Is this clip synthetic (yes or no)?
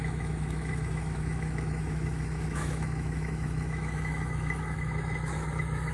yes